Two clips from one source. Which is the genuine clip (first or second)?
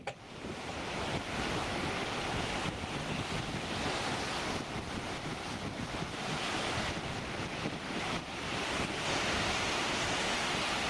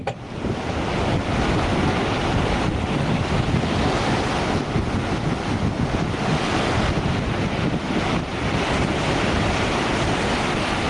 second